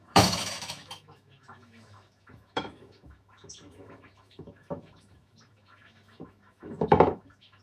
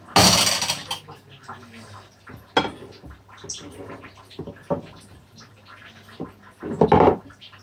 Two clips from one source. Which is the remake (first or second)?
first